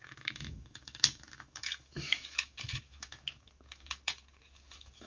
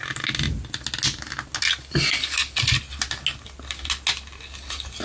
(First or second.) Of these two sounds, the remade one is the first